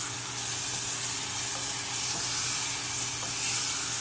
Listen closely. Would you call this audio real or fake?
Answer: real